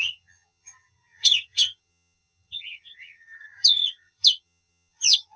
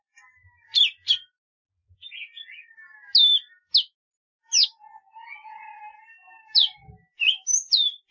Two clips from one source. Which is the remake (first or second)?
first